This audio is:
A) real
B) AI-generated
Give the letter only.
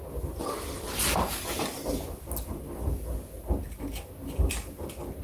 A